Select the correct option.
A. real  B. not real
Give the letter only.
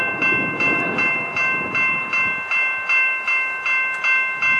A